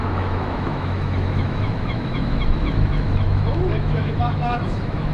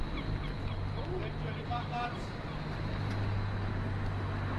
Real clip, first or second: second